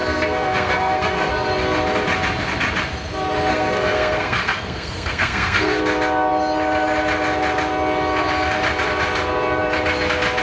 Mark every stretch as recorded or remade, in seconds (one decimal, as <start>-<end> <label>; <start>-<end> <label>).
0.0-1.3 remade; 1.3-3.5 recorded; 3.5-5.8 remade; 5.8-10.4 recorded